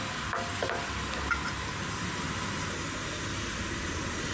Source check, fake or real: real